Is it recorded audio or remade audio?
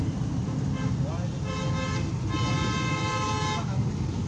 recorded